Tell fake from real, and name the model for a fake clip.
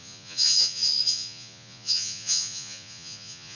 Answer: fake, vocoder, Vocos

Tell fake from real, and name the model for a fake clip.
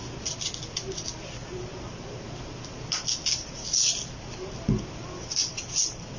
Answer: real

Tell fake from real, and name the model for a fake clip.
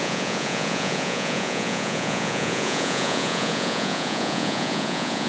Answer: fake, vocoder, Vocos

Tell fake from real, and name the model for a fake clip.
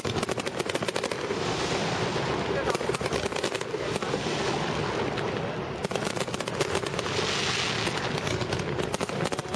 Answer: real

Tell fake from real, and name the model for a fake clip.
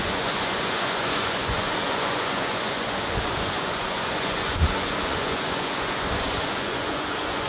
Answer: fake, vocoder, Vocos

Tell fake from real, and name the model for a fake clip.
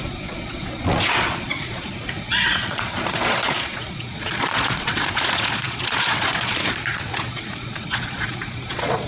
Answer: fake, vocoder, Vocos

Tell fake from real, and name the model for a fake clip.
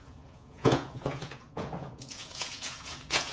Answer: fake, vocoder, Vocos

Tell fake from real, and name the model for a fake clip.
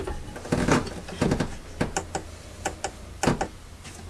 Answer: real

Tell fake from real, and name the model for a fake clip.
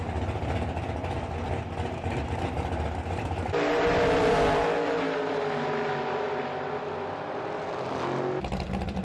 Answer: real